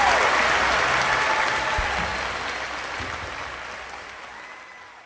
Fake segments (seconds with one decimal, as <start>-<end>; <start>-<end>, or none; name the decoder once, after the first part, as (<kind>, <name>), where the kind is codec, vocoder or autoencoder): none